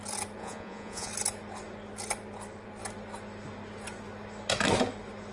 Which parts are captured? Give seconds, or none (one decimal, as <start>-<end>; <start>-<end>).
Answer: 0.0-0.4; 1.1-5.3